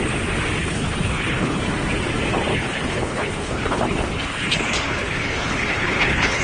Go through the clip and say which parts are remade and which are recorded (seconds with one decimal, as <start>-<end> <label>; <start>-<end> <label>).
0.0-0.6 recorded; 0.6-1.6 remade; 1.6-2.5 recorded; 2.5-6.4 remade